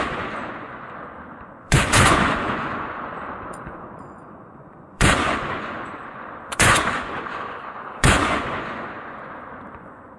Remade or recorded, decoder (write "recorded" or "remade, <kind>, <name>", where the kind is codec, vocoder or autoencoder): remade, vocoder, Vocos